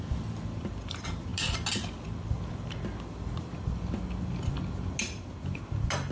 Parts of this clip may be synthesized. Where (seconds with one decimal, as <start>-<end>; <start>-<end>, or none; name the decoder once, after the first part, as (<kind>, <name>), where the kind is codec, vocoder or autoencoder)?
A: none